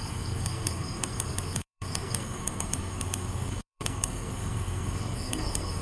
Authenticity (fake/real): fake